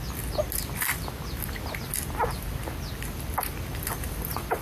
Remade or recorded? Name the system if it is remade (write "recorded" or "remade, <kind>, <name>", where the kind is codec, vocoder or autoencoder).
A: recorded